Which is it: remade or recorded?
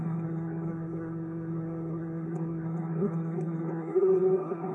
remade